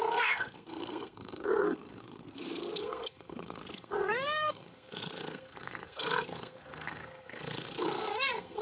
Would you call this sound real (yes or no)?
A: no